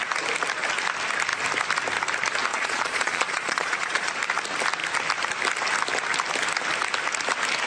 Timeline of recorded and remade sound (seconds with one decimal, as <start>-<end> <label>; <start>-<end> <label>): 0.0-2.5 recorded; 2.5-4.1 remade; 4.1-7.7 recorded